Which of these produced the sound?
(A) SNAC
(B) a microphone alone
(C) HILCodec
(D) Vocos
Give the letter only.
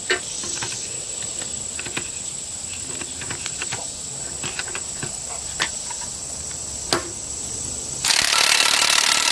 B